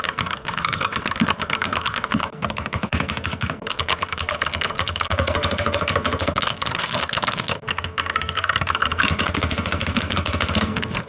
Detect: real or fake fake